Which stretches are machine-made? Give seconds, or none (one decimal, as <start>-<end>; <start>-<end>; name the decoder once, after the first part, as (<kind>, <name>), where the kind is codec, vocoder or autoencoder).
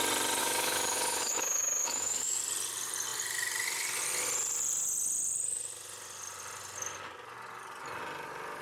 0.4-2.4 (autoencoder, DAC-VAE)